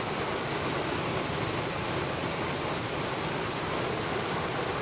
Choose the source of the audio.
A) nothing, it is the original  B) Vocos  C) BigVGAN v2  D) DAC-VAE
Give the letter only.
A